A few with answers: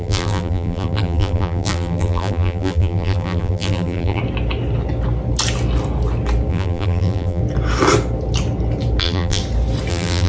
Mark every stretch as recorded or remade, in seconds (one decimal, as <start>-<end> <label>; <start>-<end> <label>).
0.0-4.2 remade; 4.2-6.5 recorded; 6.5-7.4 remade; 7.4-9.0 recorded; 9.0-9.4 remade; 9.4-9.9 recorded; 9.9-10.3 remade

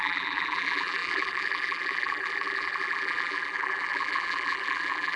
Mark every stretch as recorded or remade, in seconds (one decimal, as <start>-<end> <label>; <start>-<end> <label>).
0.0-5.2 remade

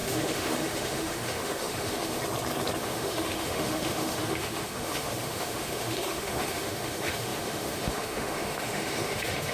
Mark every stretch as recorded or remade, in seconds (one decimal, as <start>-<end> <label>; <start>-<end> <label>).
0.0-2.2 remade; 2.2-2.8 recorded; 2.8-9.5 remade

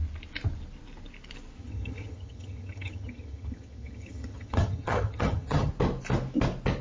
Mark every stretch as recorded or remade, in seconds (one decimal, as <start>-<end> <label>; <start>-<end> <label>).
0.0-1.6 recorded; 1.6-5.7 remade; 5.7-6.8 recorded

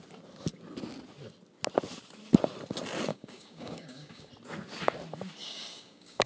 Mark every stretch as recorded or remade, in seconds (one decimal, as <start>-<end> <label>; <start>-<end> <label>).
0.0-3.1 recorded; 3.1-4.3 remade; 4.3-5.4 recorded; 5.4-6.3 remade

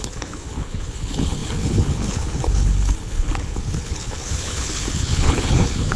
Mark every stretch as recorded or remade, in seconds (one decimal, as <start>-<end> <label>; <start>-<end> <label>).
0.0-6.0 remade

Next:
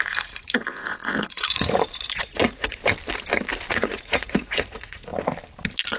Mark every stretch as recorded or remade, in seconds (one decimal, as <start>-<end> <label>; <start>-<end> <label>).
0.0-2.8 remade; 2.8-3.7 recorded; 3.7-5.1 remade; 5.1-6.0 recorded

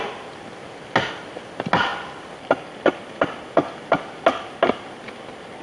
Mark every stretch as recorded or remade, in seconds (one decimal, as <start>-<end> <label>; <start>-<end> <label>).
0.0-5.6 recorded